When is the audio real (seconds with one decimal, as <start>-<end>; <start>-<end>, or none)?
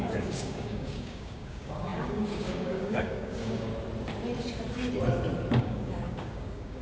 3.7-5.6